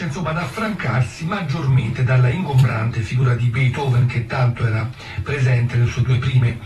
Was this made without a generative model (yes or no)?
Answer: no